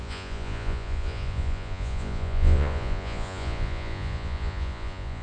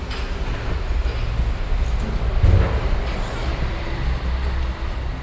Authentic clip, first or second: second